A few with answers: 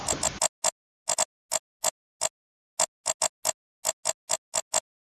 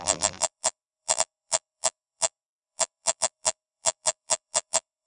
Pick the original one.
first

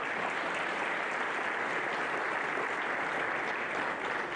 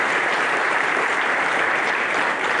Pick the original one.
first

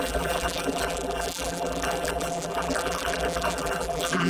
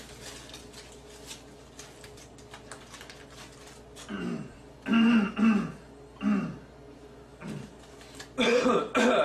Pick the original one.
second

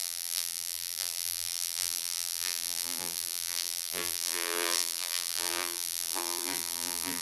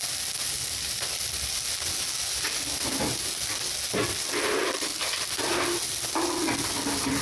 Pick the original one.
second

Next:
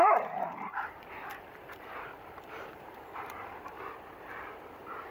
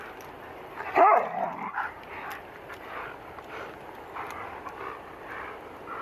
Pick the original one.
second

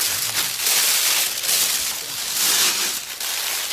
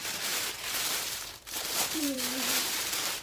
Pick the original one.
first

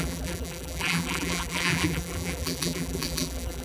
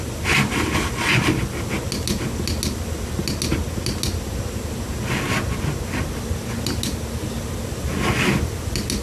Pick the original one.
second